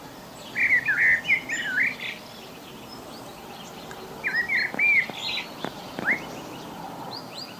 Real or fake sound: real